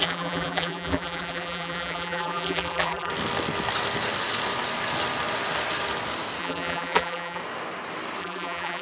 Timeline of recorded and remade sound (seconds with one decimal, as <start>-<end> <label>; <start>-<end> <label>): 0.0-3.1 remade; 3.1-6.4 recorded; 6.4-7.4 remade; 7.4-8.2 recorded; 8.2-8.8 remade